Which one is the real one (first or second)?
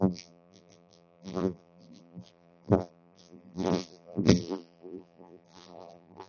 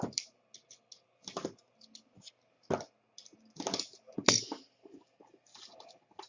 second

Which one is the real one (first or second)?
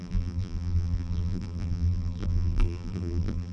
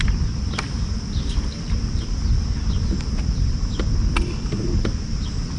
second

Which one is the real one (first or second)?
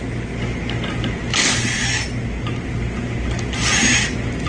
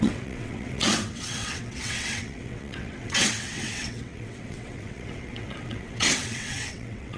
first